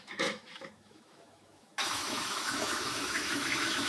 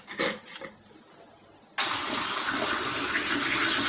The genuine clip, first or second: second